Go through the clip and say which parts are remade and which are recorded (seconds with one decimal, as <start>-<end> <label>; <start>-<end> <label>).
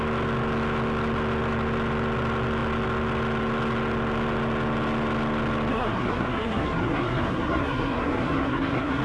0.0-5.7 recorded; 5.7-9.0 remade